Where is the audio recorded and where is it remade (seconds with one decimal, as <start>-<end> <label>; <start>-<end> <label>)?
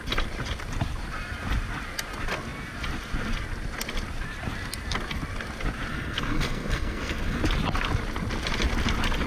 0.0-5.9 recorded; 5.9-7.4 remade; 7.4-9.3 recorded